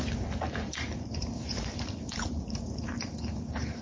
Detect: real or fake fake